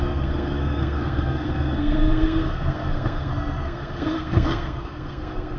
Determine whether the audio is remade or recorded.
remade